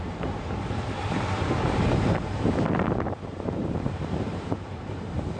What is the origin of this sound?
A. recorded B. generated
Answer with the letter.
B